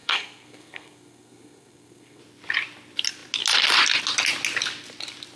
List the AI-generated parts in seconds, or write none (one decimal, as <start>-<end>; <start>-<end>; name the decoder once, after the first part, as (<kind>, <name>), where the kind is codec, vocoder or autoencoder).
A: 0.0-2.2 (codec, SNAC)